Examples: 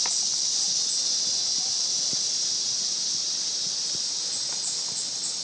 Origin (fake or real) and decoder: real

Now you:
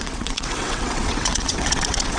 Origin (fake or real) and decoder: fake, vocoder, WaveNeXt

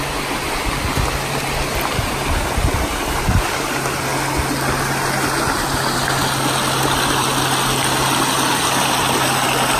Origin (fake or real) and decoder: real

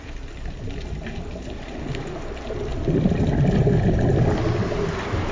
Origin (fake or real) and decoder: real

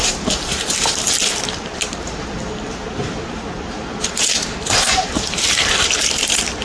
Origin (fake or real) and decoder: fake, vocoder, BigVGAN v2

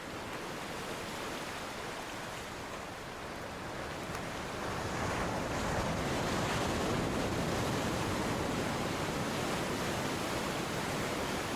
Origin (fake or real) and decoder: fake, vocoder, BigVGAN v2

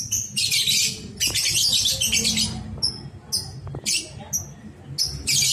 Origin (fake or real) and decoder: real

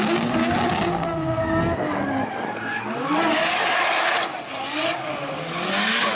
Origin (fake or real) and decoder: real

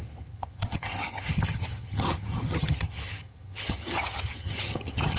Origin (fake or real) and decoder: fake, vocoder, HiFi-GAN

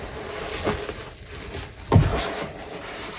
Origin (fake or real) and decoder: real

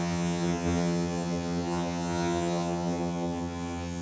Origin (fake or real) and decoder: fake, vocoder, HiFi-GAN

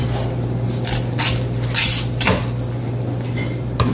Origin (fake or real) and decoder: real